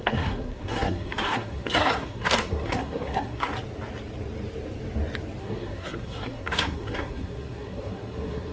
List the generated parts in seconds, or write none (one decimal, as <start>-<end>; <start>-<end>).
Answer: 0.0-3.5; 5.4-8.5